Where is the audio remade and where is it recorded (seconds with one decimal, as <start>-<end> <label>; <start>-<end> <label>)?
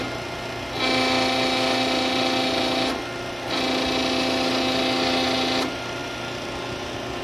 0.0-7.2 recorded